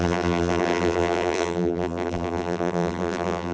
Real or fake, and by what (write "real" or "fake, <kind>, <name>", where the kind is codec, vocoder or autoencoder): fake, vocoder, BigVGAN v2